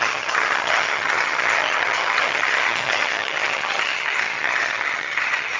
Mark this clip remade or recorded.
remade